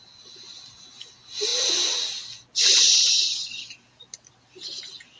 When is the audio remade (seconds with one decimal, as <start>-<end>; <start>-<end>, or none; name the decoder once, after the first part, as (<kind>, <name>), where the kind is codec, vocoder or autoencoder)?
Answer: none